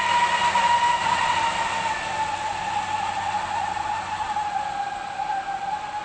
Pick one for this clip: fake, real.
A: real